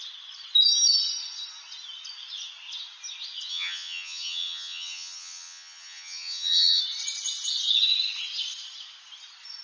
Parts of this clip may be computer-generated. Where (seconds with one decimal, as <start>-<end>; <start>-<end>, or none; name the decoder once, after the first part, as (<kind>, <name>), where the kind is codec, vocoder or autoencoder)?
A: 3.5-6.8 (vocoder, HiFi-GAN)